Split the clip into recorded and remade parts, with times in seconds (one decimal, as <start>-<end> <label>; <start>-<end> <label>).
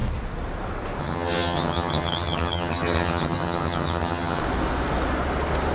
0.0-1.0 recorded; 1.0-4.4 remade; 4.4-5.7 recorded